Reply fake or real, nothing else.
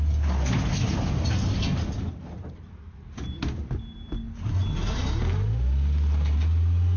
real